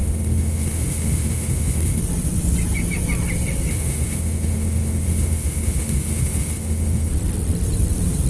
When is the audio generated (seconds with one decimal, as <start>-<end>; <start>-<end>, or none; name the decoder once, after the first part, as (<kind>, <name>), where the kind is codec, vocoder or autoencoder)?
0.0-2.0 (autoencoder, DAC-VAE); 3.7-7.1